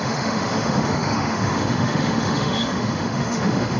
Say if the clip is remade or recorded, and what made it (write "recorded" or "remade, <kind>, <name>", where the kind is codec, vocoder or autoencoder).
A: remade, autoencoder, DAC-VAE